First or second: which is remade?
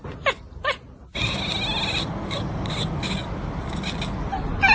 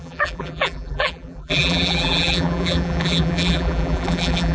second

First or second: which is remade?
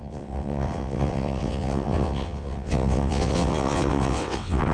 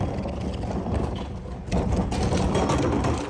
first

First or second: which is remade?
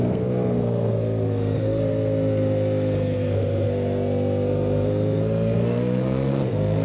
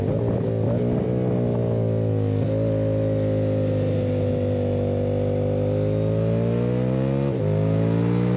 first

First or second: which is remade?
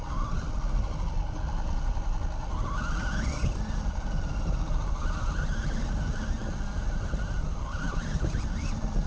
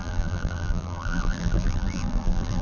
second